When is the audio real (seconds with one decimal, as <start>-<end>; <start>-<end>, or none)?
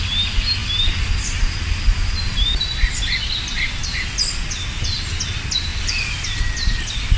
0.0-5.7; 6.8-7.2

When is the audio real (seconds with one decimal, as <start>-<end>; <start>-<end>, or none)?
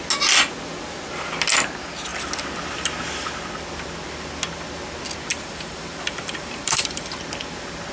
0.0-5.3; 7.2-7.9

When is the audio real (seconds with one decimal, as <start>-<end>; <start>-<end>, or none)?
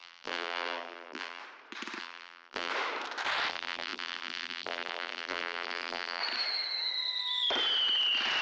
1.4-2.0; 2.7-3.5; 6.2-8.4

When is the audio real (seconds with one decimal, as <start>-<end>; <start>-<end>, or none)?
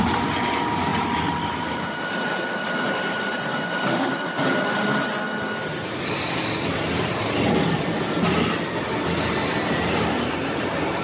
0.0-0.9; 5.2-11.0